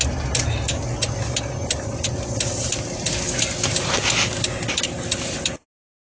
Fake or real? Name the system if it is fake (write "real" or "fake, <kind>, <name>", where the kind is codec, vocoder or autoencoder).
real